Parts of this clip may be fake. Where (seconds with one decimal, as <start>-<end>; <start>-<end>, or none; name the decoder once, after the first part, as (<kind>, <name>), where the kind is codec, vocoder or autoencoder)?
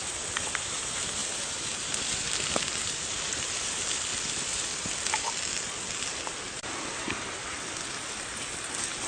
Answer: 0.0-9.1 (vocoder, BigVGAN v2)